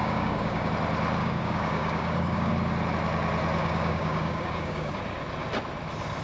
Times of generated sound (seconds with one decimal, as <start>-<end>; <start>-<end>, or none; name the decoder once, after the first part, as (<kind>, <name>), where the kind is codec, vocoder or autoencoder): 0.0-0.7 (codec, DAC); 1.2-2.5; 3.6-4.9

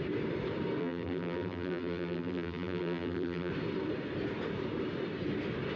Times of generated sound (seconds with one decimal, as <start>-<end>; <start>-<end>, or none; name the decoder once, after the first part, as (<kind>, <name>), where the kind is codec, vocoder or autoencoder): 0.8-3.5 (vocoder, BigVGAN v2)